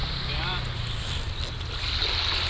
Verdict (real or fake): real